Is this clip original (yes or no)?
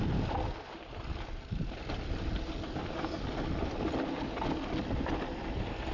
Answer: yes